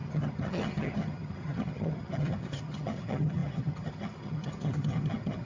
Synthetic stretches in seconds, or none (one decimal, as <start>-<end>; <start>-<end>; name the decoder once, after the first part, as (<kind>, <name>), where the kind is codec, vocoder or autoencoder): 0.0-5.5 (vocoder, HiFi-GAN)